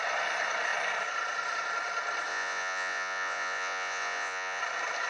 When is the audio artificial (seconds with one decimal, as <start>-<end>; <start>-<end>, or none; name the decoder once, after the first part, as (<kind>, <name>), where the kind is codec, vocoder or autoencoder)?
2.3-4.6 (vocoder, Vocos)

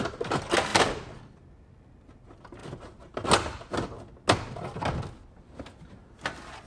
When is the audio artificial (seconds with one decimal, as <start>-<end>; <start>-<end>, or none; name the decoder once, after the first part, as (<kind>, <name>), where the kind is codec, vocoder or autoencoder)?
none

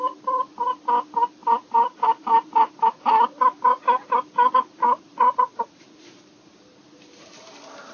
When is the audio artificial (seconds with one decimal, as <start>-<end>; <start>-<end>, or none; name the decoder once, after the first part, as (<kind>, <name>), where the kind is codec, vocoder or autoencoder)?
4.7-6.2 (vocoder, Vocos)

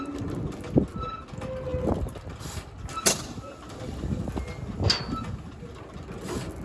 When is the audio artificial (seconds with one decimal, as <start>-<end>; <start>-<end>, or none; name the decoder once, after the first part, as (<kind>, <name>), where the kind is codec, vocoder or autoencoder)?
none

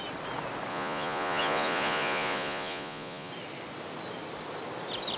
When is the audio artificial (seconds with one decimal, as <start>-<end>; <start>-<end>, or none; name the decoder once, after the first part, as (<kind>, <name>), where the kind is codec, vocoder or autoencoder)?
0.7-3.3 (vocoder, Vocos)

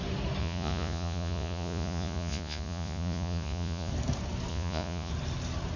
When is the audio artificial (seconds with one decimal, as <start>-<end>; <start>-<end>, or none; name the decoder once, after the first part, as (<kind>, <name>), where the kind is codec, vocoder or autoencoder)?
0.4-3.9 (vocoder, Vocos); 4.5-5.1

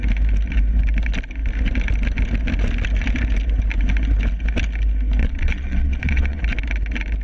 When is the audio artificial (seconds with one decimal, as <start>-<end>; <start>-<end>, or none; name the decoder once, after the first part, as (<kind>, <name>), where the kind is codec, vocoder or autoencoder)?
5.2-6.4 (vocoder, Vocos)